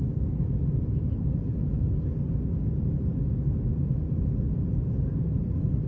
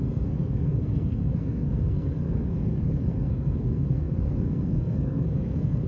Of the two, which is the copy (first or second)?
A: second